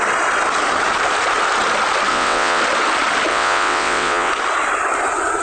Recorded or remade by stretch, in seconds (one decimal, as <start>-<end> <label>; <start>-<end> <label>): 0.0-2.1 recorded; 2.1-2.6 remade; 2.6-3.3 recorded; 3.3-4.3 remade; 4.3-5.4 recorded